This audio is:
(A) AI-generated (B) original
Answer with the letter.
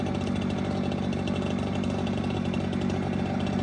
B